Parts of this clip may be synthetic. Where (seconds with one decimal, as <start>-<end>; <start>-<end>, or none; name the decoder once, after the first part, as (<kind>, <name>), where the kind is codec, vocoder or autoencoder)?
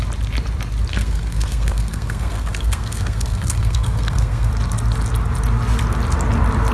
0.9-4.5 (codec, SNAC)